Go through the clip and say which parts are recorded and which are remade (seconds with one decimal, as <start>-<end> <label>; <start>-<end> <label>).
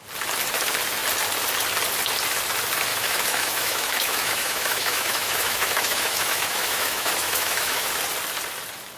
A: 0.0-2.9 recorded; 2.9-7.9 remade; 7.9-9.0 recorded